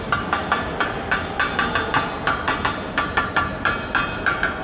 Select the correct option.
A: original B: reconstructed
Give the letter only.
A